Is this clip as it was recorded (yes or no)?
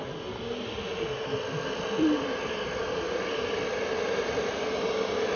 yes